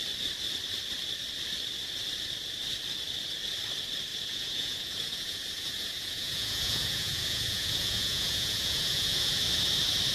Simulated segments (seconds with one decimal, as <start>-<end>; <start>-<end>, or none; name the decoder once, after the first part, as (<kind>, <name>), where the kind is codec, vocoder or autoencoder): 4.1-9.4 (vocoder, Vocos)